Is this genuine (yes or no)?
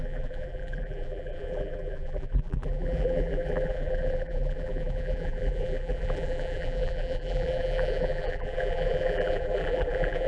no